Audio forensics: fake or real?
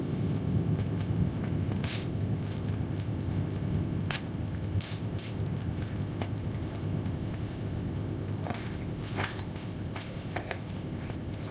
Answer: fake